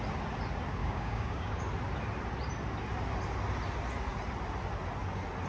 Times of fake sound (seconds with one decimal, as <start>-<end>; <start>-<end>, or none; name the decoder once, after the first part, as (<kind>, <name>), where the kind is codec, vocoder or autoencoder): 0.8-1.6 (codec, DAC)